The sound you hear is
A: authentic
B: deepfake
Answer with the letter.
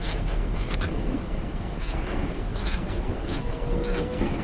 B